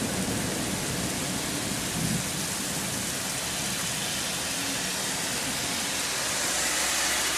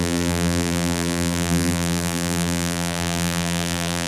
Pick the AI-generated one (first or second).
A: second